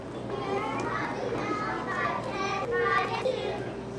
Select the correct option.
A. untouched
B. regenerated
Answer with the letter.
A